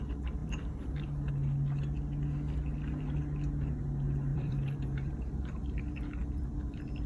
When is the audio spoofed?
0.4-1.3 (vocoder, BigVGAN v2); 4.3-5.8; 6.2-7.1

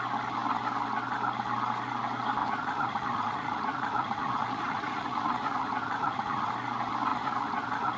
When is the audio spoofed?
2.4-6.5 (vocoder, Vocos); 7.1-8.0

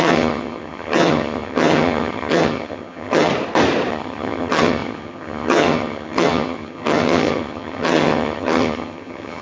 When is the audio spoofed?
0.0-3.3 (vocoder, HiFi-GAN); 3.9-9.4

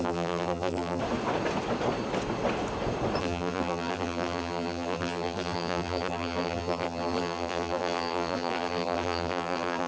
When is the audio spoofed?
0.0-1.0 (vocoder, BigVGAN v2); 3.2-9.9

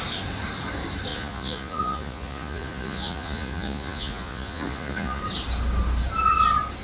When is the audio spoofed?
1.1-5.2 (vocoder, Vocos)

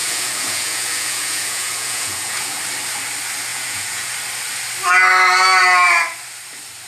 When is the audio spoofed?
0.0-2.6 (vocoder, Vocos); 3.5-4.1